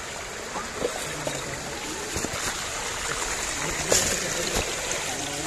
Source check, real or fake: real